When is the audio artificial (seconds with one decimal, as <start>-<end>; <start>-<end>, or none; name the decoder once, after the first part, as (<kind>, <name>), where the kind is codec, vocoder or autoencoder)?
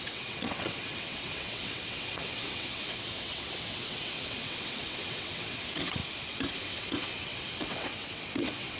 0.0-6.0 (vocoder, WaveNeXt); 6.5-8.8